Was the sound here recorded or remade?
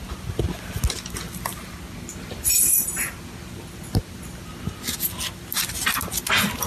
recorded